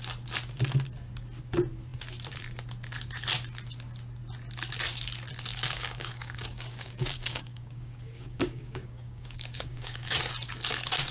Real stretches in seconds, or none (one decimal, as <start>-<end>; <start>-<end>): 0.0-5.5; 10.2-11.1